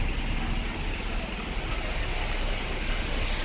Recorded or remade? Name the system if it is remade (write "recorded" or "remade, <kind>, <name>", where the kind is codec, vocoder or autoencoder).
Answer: recorded